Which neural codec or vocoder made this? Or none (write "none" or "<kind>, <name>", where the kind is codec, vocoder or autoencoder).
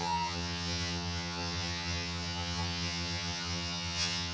vocoder, HiFi-GAN